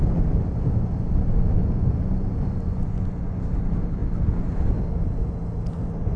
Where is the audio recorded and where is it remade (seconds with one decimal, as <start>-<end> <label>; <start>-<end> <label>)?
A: 0.0-1.6 recorded; 1.6-3.4 remade; 3.4-6.2 recorded